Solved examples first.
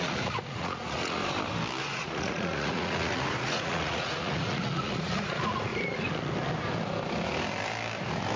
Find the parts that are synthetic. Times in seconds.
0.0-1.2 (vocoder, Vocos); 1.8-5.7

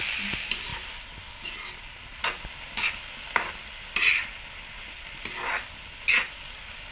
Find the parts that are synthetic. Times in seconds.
none

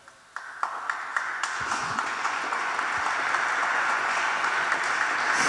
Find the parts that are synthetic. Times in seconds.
1.1-2.7 (vocoder, Vocos); 3.6-4.7